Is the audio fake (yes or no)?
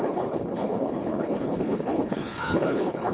yes